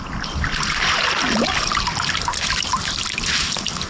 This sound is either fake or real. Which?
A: real